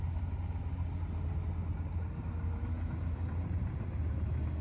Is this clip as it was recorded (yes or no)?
yes